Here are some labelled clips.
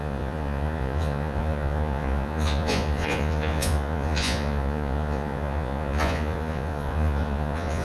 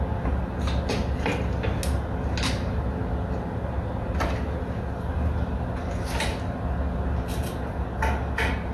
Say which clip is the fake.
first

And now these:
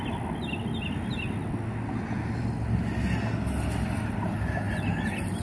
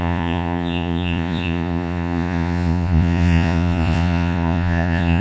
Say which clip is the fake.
second